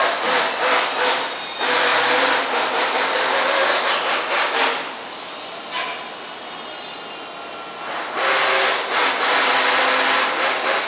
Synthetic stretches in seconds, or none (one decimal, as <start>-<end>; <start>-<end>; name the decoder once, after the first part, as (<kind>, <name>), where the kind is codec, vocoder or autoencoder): 1.9-3.8 (vocoder, BigVGAN v2)